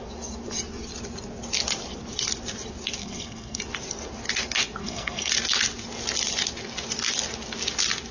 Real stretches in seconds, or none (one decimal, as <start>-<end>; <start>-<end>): 0.0-3.0; 3.6-4.8; 5.3-8.1